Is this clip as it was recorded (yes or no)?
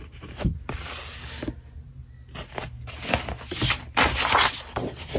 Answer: yes